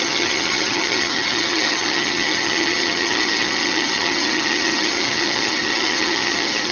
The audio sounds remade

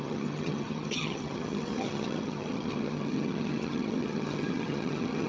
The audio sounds remade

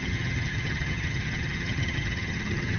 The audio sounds remade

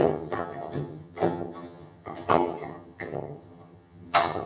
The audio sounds remade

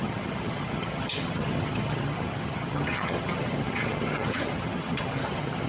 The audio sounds remade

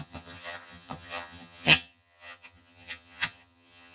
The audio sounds remade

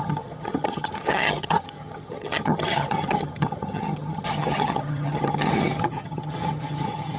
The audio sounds remade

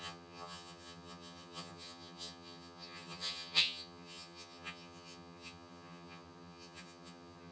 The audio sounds remade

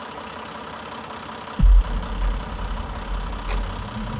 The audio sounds recorded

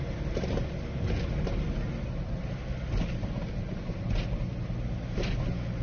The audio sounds recorded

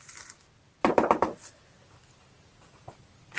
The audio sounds recorded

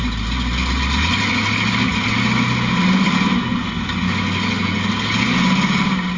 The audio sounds recorded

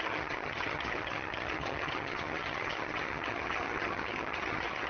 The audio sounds remade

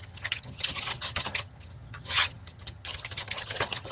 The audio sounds remade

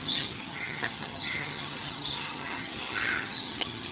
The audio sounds remade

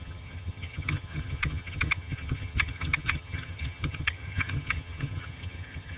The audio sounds remade